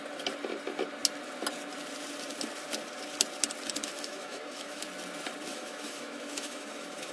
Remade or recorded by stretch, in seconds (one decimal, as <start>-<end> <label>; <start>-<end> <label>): 0.0-3.8 recorded; 3.8-4.8 remade; 4.8-5.5 recorded; 5.5-7.1 remade